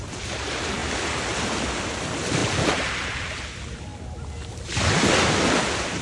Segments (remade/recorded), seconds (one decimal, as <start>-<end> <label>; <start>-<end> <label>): 0.0-0.8 remade; 0.8-1.3 recorded; 1.3-3.9 remade; 3.9-5.3 recorded; 5.3-6.0 remade